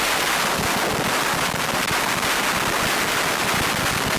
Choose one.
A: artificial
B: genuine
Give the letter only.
B